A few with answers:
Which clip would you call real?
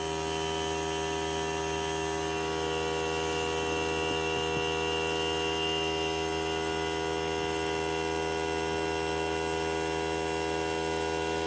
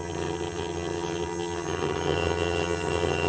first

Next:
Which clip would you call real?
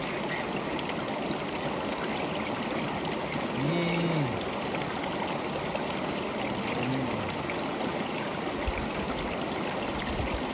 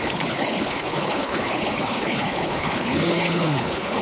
first